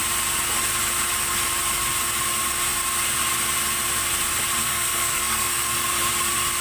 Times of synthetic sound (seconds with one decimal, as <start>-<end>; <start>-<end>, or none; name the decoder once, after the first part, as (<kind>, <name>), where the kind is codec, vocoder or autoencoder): 4.6-5.6 (codec, SNAC)